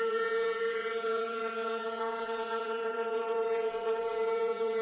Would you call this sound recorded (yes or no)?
no